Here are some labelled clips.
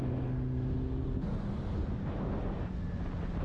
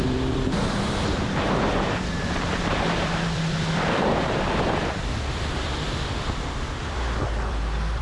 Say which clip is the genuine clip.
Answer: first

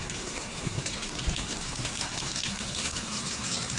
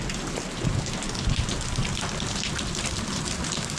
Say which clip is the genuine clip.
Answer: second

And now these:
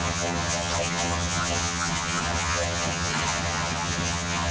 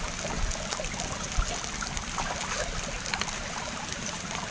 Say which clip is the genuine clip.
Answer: second